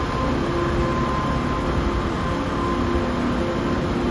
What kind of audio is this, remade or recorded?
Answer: recorded